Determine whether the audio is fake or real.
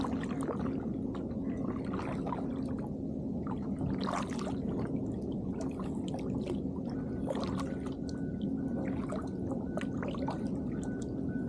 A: real